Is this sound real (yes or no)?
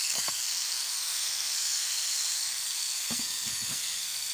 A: no